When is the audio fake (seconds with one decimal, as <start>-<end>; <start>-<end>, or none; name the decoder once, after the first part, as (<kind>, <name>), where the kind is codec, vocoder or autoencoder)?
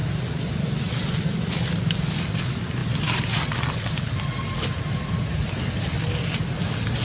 none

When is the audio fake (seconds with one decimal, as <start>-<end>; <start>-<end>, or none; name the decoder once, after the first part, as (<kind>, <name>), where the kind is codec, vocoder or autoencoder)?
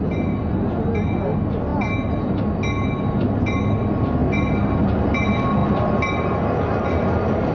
none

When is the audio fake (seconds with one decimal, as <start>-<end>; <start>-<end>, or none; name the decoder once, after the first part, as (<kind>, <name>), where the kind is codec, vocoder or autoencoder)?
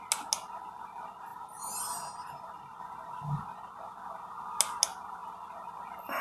none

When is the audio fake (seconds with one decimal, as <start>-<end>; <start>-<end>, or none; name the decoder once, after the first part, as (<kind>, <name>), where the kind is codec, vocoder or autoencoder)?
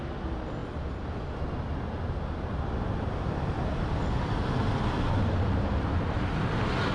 none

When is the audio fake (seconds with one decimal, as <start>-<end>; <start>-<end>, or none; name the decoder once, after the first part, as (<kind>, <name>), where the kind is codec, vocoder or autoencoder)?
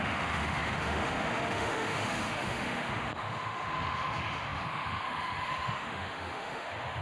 0.0-7.0 (autoencoder, DAC-VAE)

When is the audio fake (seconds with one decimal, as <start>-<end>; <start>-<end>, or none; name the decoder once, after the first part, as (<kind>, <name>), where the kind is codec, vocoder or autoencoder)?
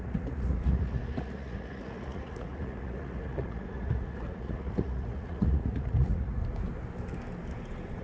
0.0-6.4 (vocoder, Vocos)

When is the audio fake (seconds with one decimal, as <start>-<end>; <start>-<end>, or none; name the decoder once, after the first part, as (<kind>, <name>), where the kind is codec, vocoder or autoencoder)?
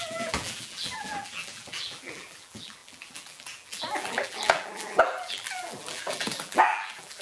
0.0-7.2 (vocoder, BigVGAN v2)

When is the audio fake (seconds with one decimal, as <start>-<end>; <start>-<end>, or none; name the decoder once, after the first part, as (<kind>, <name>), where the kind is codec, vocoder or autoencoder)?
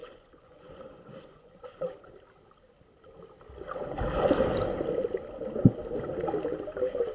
0.0-2.1 (vocoder, Vocos)